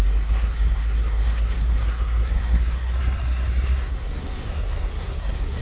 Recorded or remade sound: remade